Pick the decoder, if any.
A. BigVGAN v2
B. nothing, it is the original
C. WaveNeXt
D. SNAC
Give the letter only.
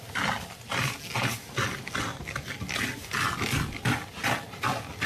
B